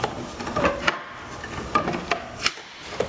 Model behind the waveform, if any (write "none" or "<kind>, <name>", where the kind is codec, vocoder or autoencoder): none